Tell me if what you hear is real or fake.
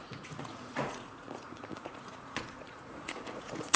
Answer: fake